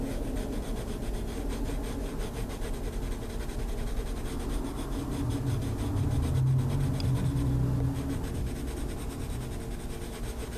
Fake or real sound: real